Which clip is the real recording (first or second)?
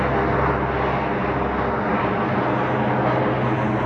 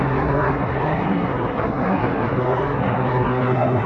first